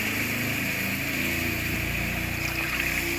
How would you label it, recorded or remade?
recorded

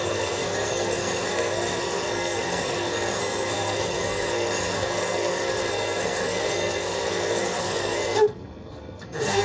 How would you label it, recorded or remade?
remade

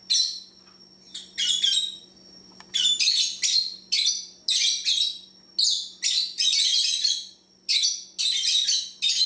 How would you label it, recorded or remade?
recorded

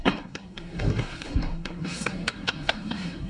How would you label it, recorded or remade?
remade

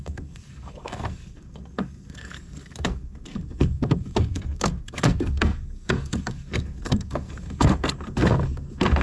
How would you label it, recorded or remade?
remade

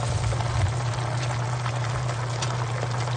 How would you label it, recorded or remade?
recorded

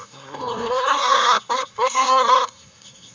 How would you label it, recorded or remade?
remade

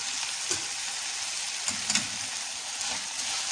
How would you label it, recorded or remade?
recorded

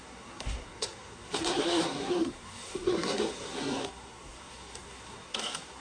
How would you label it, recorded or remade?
remade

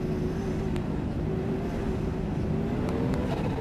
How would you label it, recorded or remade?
recorded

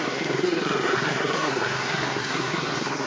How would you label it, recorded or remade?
remade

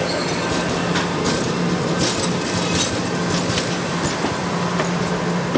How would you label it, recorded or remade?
recorded